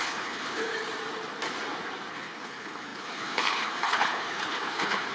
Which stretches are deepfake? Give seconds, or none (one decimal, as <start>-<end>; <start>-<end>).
0.0-0.7; 2.1-5.1